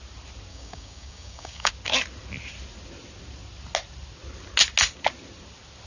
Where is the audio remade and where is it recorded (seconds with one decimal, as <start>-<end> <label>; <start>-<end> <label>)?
0.0-0.5 recorded; 0.5-1.7 remade; 1.7-5.9 recorded